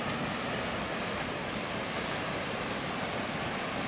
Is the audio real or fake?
real